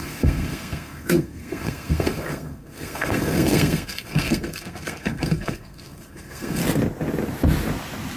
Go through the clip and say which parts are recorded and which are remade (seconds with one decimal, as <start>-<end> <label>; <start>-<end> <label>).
0.0-6.6 remade; 6.6-8.2 recorded

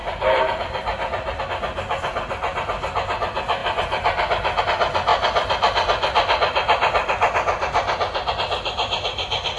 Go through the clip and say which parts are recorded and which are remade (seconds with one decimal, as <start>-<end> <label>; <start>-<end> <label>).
0.0-1.4 remade; 1.4-9.6 recorded